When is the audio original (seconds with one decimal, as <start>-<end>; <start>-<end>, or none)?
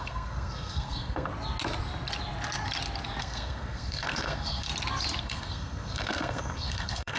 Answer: 1.3-3.2; 4.7-5.2